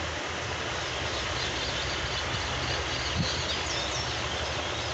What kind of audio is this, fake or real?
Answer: real